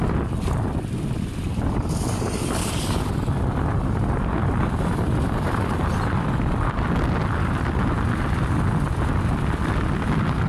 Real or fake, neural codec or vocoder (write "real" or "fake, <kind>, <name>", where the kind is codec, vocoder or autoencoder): real